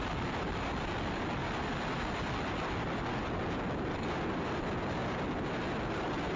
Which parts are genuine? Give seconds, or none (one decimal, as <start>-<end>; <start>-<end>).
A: 0.0-6.4